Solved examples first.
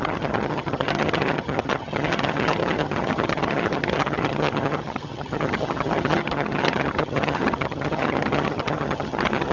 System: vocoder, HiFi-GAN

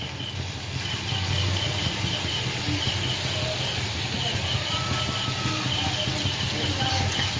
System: none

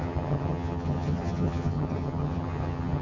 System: vocoder, HiFi-GAN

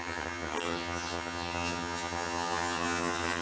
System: vocoder, HiFi-GAN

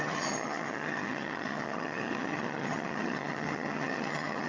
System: vocoder, HiFi-GAN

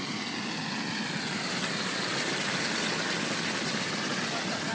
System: none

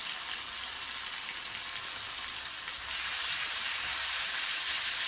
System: none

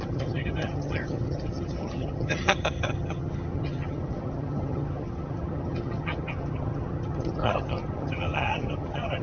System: vocoder, HiFi-GAN